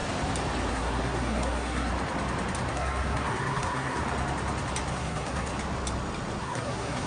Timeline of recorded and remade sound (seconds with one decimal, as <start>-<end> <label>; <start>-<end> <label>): 0.0-0.7 recorded; 0.7-1.9 remade; 1.9-2.7 recorded; 2.7-4.0 remade; 4.0-4.9 recorded; 4.9-5.5 remade; 5.5-6.4 recorded; 6.4-7.1 remade